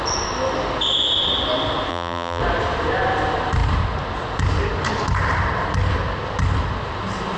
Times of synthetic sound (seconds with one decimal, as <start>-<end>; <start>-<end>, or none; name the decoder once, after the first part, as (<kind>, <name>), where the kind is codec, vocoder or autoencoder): 1.9-2.4 (vocoder, BigVGAN v2)